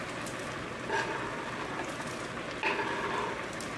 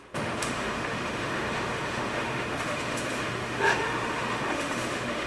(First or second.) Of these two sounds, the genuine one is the first